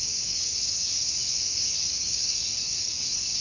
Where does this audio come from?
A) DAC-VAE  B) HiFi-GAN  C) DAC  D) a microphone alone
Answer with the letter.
C